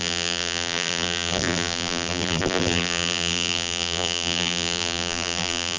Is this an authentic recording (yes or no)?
no